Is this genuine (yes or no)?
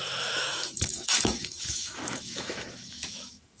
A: no